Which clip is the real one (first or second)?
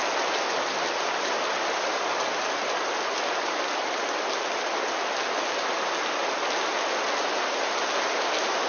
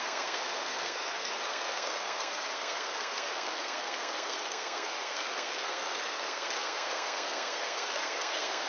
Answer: first